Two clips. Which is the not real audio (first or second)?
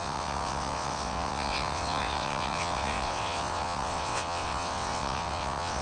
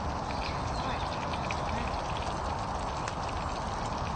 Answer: first